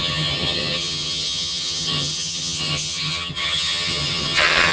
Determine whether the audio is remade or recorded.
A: remade